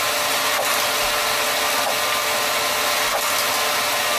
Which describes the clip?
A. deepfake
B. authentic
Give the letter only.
B